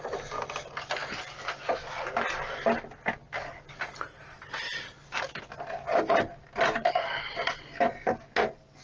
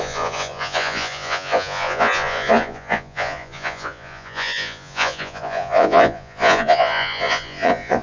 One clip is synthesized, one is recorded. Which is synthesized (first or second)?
second